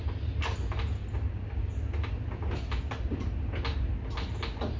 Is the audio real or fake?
real